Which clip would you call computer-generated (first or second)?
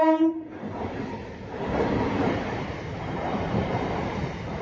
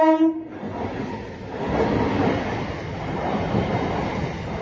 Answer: first